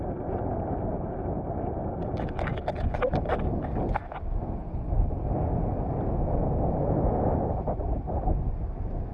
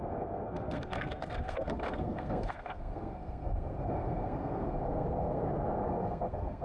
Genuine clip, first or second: first